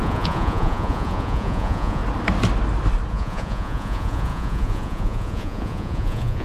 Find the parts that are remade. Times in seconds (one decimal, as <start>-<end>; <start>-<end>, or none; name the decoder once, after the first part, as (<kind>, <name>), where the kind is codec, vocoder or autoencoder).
0.0-2.0 (vocoder, Vocos); 3.1-6.4